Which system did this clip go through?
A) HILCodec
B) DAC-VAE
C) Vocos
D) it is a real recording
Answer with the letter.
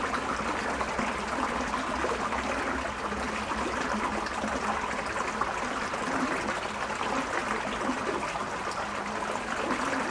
D